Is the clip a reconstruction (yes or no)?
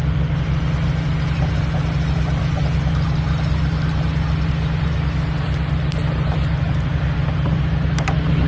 no